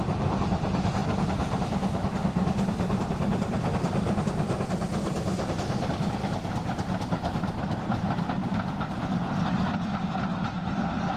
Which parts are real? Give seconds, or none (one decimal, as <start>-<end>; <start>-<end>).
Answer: 0.0-5.0; 6.2-8.4; 9.0-11.2

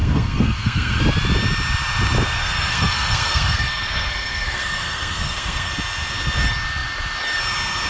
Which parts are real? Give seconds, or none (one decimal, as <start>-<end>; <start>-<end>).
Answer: 1.0-2.4; 5.7-7.9

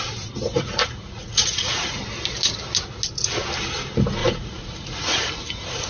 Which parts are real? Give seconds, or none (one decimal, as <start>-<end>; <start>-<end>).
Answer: 0.0-0.5; 2.0-4.2

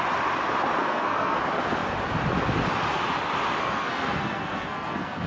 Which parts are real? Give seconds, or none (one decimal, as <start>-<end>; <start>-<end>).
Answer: 0.0-0.8; 1.4-3.6

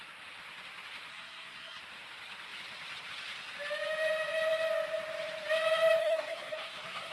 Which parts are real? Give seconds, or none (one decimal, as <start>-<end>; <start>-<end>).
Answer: 0.0-1.1; 1.8-6.0

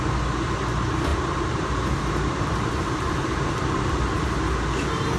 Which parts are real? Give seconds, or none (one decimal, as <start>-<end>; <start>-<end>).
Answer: 0.0-1.1; 4.2-5.2

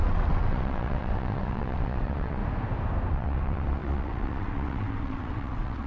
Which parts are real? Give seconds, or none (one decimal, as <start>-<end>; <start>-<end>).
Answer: 2.4-3.1